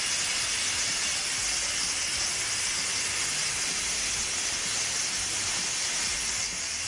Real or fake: real